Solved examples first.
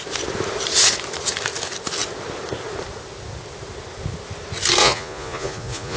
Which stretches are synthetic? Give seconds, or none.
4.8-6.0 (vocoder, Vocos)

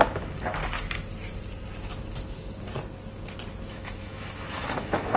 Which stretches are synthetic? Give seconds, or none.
0.0-0.6 (autoencoder, DAC-VAE); 3.7-5.2